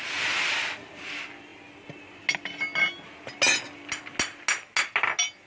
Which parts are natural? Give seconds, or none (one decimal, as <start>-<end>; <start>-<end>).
0.0-5.5